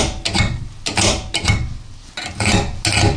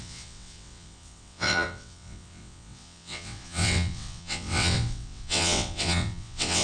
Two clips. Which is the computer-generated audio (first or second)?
second